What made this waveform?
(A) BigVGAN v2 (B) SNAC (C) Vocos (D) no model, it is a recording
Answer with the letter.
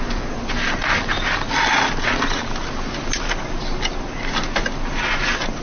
D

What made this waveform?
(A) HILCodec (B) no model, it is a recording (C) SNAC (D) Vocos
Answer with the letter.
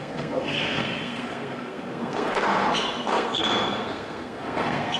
C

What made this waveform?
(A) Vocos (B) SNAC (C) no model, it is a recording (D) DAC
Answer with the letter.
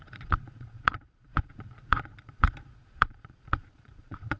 A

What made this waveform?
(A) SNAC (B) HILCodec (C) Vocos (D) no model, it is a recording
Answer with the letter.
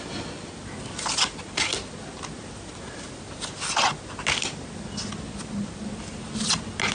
D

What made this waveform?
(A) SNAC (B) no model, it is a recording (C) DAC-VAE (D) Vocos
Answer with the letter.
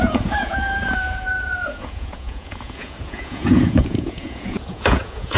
D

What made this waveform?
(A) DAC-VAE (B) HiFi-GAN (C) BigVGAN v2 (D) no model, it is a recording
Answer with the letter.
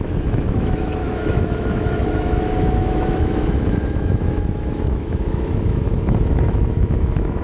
A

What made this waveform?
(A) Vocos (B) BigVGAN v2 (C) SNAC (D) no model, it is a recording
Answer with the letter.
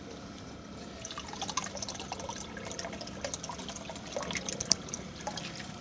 B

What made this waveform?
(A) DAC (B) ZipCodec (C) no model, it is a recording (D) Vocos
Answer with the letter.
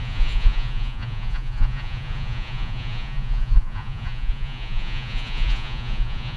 D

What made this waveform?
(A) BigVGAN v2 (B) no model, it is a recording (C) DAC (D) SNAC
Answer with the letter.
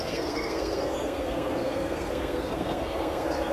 D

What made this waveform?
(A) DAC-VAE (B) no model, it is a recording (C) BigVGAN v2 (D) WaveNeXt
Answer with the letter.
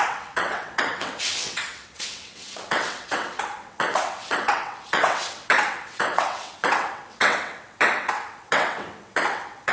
D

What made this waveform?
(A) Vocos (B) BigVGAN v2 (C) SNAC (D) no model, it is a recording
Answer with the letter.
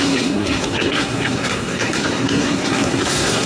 C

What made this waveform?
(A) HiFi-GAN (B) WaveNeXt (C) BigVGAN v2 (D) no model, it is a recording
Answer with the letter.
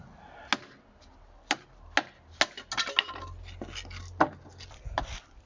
D